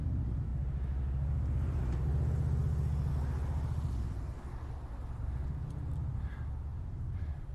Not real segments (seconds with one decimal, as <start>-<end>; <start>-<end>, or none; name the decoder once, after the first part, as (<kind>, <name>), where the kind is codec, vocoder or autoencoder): 6.7-7.5 (vocoder, BigVGAN v2)